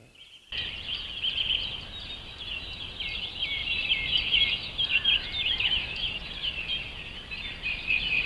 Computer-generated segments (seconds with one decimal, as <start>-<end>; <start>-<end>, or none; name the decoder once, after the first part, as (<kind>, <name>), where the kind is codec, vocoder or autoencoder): 4.9-6.1 (vocoder, BigVGAN v2)